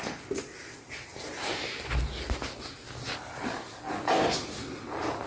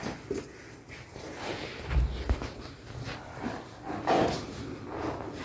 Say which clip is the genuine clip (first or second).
first